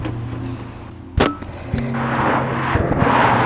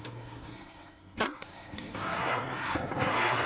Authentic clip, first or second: first